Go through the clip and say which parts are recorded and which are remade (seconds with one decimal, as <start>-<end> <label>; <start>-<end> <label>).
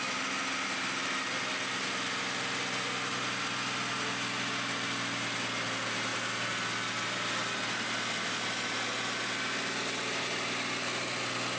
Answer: 0.0-11.6 recorded